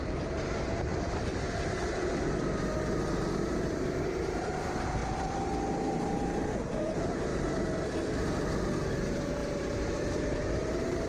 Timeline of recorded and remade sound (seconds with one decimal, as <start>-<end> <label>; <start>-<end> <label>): 0.0-5.0 remade; 5.0-5.7 recorded; 5.7-7.3 remade; 7.3-8.9 recorded; 8.9-11.1 remade